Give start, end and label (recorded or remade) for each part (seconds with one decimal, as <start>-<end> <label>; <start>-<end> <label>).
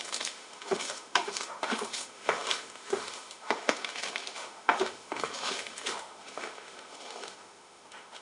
0.0-8.2 remade